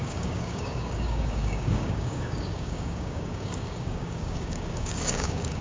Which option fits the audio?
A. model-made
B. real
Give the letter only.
A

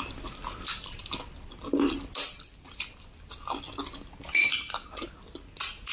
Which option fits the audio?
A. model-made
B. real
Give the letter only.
B